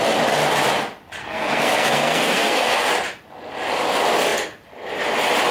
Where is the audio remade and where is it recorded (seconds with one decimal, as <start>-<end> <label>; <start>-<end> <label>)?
0.0-1.2 recorded; 1.2-2.9 remade; 2.9-5.5 recorded